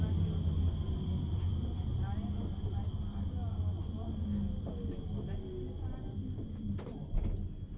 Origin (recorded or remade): recorded